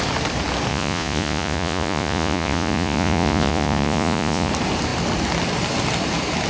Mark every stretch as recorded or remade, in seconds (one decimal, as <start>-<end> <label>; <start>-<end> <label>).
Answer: 0.0-0.7 recorded; 0.7-4.5 remade; 4.5-6.5 recorded